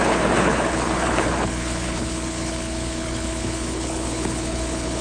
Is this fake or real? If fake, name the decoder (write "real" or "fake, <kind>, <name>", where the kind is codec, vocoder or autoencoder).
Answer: fake, codec, HILCodec